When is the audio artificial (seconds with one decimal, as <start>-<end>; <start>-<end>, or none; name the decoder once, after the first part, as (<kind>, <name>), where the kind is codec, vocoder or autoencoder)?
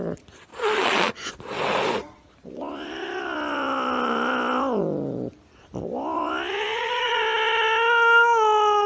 0.5-1.3 (vocoder, Vocos); 6.7-7.2